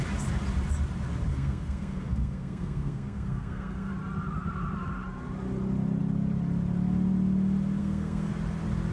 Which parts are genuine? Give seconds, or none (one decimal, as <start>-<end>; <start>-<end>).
0.0-1.3; 3.9-7.8; 8.3-8.9